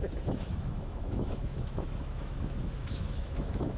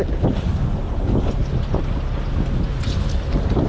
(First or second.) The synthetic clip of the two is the first